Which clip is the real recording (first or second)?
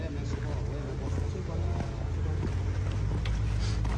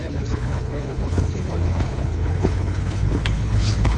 first